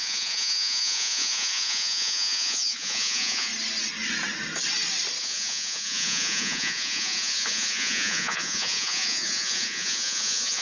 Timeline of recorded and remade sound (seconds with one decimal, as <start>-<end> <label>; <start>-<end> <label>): 0.0-3.5 remade; 3.5-5.2 recorded; 5.2-10.6 remade